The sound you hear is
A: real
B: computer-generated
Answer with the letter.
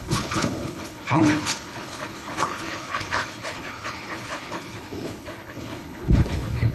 B